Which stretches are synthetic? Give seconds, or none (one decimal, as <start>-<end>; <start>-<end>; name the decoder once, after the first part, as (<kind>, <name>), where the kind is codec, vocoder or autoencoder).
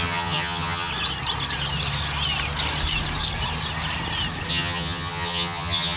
0.0-0.9 (vocoder, HiFi-GAN); 4.5-6.0